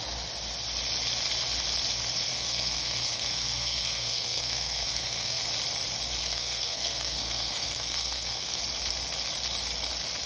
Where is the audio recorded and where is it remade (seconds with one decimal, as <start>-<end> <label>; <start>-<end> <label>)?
0.0-2.3 recorded; 2.3-5.4 remade; 5.4-6.2 recorded; 6.2-8.6 remade; 8.6-10.3 recorded